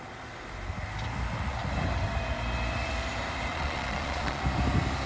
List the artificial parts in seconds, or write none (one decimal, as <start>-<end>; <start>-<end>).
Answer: 3.5-4.4